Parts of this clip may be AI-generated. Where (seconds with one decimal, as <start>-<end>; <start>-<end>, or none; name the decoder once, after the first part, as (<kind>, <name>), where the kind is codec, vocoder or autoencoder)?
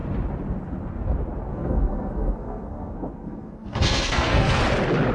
1.5-4.6 (codec, SNAC)